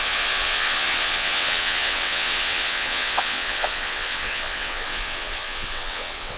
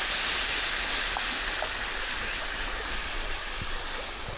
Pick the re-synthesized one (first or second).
first